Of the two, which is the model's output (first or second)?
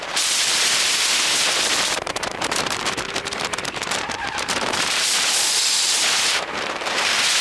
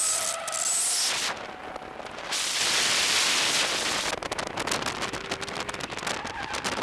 first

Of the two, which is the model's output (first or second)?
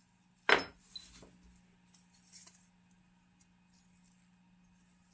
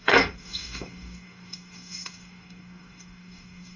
second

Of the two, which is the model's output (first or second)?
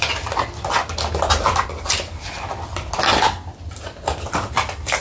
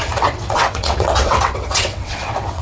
second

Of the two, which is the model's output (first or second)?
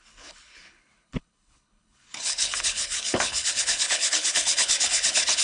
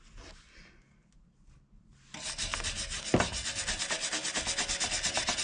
first